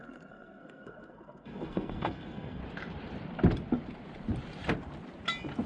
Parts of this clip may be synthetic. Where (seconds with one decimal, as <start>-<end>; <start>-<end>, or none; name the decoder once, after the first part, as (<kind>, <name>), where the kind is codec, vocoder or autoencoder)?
0.0-2.6 (codec, SNAC)